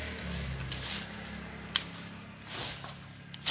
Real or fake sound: real